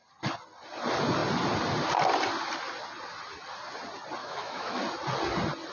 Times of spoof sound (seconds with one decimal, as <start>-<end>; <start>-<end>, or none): 4.2-4.8